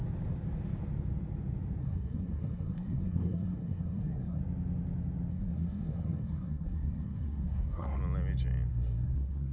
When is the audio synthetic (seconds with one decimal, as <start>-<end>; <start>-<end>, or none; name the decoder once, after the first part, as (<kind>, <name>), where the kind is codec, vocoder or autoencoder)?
1.8-4.4 (codec, SNAC); 5.3-8.0; 8.7-9.5